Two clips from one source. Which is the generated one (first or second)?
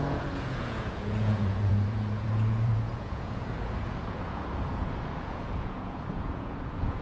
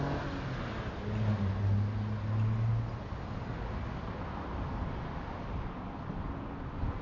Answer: first